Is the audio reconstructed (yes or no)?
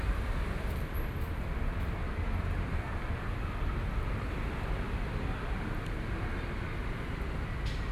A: no